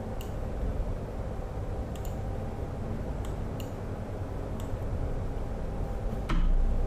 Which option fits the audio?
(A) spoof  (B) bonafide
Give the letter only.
B